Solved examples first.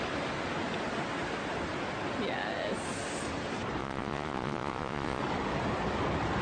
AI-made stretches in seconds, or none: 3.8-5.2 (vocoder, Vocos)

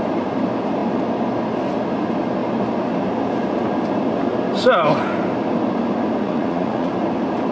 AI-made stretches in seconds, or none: 6.2-6.9 (vocoder, Vocos)

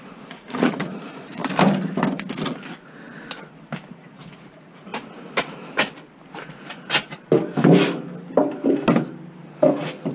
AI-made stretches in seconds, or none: 0.0-1.4 (vocoder, Vocos); 3.9-4.9

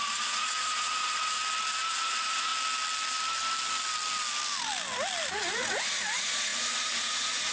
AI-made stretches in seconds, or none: 0.0-1.4 (vocoder, Vocos); 1.9-2.5; 5.3-7.5

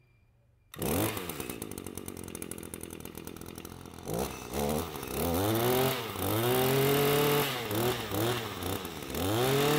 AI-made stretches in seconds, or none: none

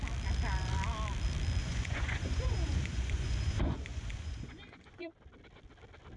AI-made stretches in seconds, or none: 1.6-5.0 (vocoder, Vocos)

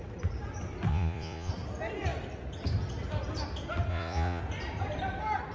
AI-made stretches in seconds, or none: 0.9-1.5 (vocoder, Vocos); 3.9-4.4

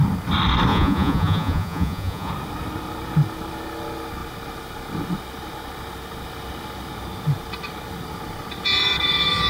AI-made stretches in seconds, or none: 0.7-2.3 (vocoder, Vocos)